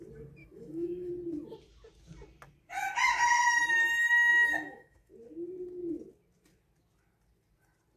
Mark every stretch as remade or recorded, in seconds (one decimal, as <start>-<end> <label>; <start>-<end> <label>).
0.0-0.4 recorded; 0.4-1.1 remade; 1.1-4.3 recorded; 4.3-5.1 remade; 5.1-8.0 recorded